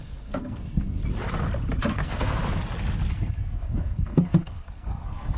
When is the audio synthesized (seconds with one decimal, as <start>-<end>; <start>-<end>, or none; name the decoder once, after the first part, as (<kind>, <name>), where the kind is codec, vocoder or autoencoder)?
0.0-1.0 (codec, SNAC); 1.9-2.4; 3.1-5.4